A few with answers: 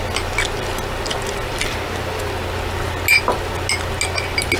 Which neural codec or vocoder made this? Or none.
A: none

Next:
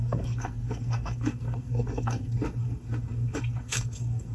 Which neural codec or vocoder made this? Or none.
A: codec, SNAC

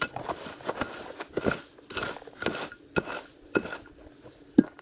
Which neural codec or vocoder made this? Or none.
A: none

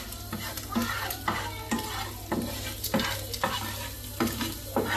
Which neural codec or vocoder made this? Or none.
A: none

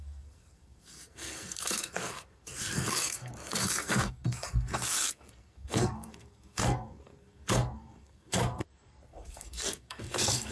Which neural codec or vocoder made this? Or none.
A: codec, SNAC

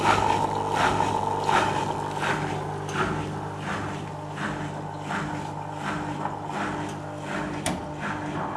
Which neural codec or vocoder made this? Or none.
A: none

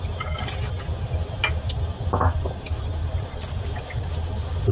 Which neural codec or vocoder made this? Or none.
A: none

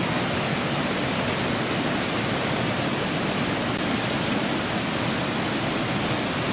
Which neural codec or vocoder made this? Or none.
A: none